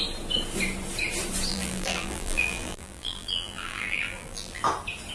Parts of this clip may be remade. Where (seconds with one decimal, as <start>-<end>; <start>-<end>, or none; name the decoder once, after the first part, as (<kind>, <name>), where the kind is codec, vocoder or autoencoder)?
1.5-4.6 (vocoder, BigVGAN v2)